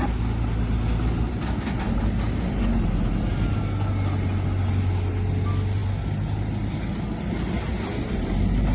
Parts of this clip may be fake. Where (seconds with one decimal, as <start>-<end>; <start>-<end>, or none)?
none